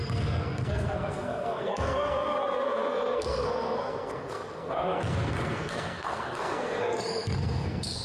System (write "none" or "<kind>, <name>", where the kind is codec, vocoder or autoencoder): codec, SNAC